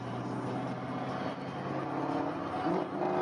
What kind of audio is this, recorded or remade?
recorded